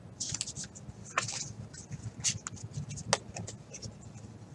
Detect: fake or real real